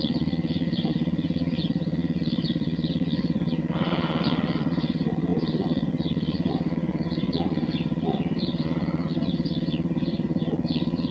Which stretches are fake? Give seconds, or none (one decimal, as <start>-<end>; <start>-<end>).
0.0-11.1